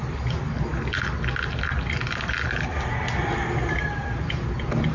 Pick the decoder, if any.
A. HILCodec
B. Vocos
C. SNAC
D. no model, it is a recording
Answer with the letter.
D